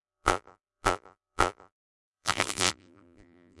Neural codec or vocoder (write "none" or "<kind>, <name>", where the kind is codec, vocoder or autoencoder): vocoder, BigVGAN v2